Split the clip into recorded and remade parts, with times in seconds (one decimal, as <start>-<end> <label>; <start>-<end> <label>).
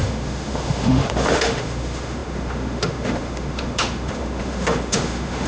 0.0-5.5 remade